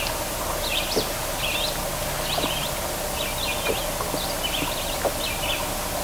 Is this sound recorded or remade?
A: recorded